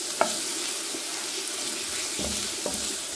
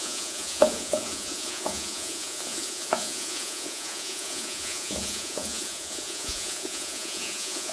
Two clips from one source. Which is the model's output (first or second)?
second